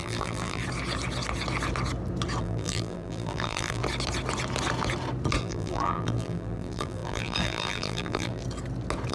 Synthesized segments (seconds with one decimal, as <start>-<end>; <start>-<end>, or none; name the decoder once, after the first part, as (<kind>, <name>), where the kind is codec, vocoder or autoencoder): 0.0-0.6 (vocoder, BigVGAN v2); 2.4-3.8; 5.4-8.4